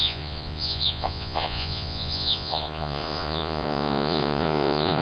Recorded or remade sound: remade